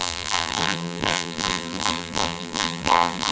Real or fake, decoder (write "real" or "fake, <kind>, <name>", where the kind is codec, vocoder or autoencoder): fake, vocoder, BigVGAN v2